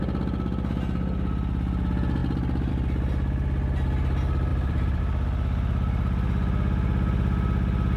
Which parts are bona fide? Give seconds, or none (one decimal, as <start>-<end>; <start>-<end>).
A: 0.0-4.5; 5.0-8.0